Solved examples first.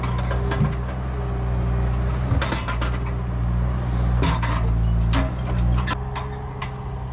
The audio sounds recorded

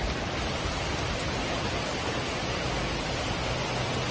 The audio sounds recorded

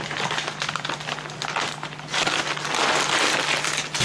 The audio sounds recorded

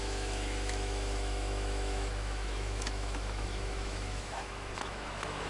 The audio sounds remade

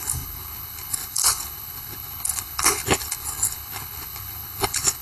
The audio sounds remade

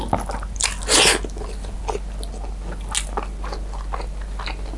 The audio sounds recorded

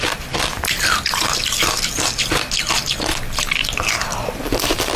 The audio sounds recorded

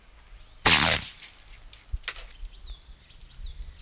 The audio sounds recorded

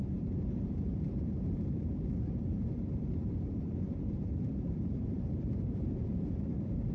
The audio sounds remade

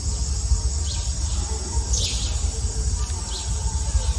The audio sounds recorded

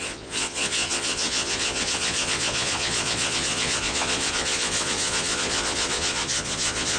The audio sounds remade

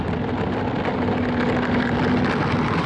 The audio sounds recorded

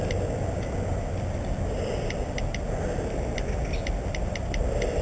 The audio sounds recorded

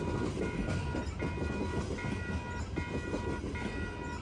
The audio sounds recorded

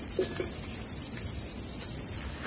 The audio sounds recorded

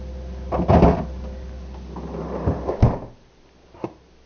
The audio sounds recorded